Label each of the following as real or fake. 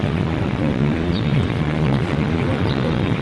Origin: fake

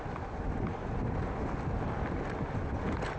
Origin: real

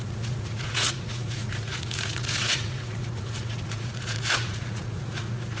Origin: fake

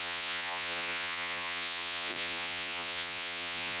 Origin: fake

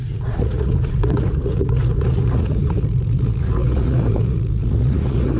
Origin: fake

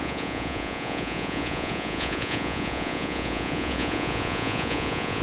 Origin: fake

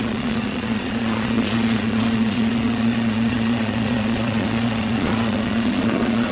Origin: fake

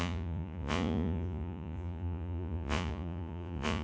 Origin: fake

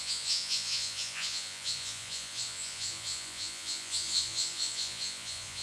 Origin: fake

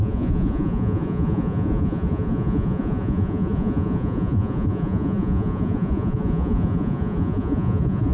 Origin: fake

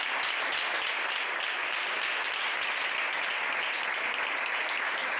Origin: real